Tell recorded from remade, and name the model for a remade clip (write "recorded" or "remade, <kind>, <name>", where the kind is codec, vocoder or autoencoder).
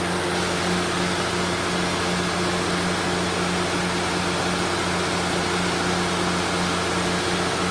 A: recorded